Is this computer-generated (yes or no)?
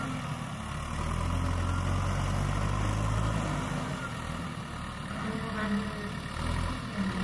no